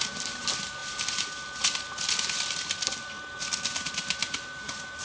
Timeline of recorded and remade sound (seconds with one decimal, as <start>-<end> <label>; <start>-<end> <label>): 0.0-0.8 remade; 0.8-3.8 recorded; 3.8-5.0 remade